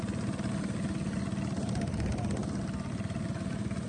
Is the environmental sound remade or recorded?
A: recorded